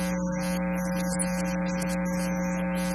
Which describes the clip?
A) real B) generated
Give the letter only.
A